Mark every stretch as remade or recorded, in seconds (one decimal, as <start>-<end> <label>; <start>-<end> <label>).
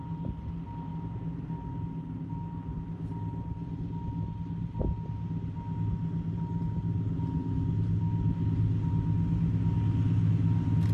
0.0-10.9 recorded